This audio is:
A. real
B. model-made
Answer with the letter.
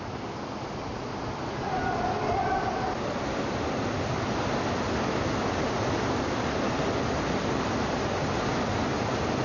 A